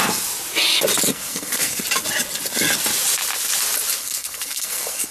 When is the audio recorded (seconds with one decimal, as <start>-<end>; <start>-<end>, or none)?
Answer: 0.0-1.1; 1.8-4.0